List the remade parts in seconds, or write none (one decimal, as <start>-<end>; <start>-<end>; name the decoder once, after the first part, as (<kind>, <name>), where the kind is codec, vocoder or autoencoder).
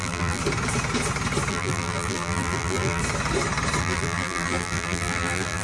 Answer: 0.0-0.4 (vocoder, BigVGAN v2); 1.5-3.0; 3.8-5.6